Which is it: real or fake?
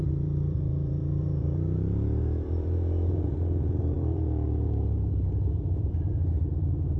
fake